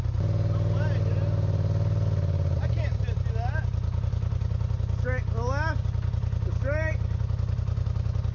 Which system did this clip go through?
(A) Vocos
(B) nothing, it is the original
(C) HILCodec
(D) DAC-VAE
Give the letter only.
B